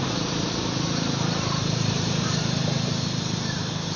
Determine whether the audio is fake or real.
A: fake